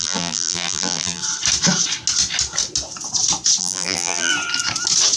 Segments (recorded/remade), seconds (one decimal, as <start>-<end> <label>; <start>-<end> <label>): 0.0-1.2 remade; 1.2-3.6 recorded; 3.6-4.3 remade; 4.3-5.2 recorded